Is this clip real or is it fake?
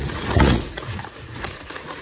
fake